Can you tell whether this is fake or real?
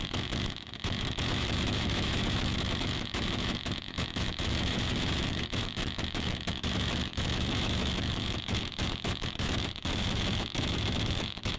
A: fake